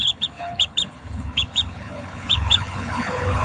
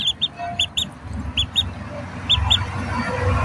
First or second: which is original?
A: second